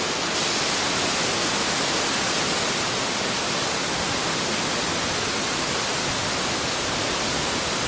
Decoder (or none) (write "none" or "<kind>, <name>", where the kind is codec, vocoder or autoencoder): none